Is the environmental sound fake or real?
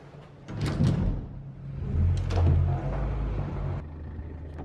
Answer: real